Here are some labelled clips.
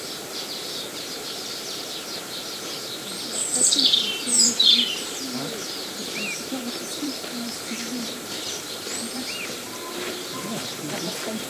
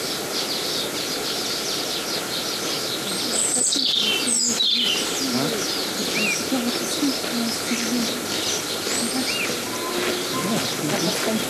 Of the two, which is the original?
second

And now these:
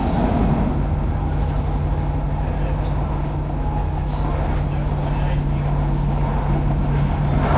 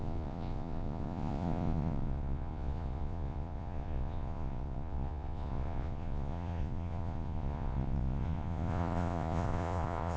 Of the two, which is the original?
first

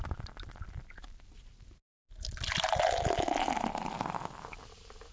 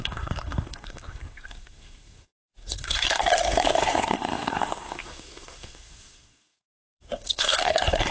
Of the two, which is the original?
first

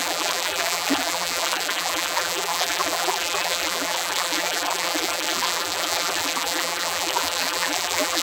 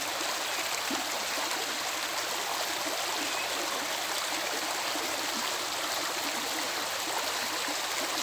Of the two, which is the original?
second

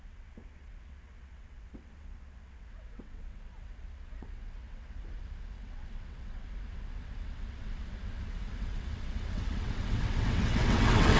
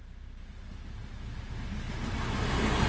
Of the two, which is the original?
second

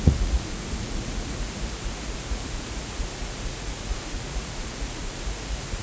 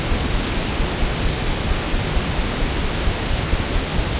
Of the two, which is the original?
second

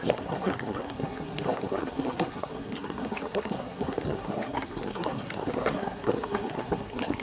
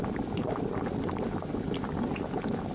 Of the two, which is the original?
second